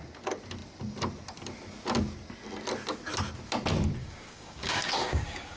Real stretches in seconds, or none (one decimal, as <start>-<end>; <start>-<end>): 0.0-4.0